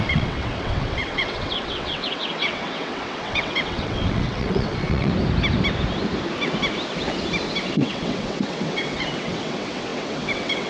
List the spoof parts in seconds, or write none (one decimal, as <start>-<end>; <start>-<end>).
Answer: 0.0-5.1; 7.7-10.7